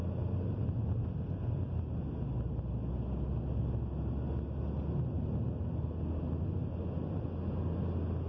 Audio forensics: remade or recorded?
recorded